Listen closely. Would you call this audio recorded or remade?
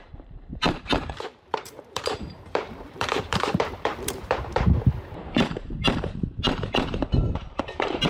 remade